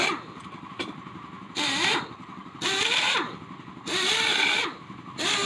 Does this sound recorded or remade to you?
recorded